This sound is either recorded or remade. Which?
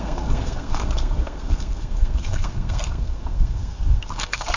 remade